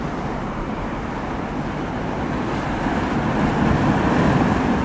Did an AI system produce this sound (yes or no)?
no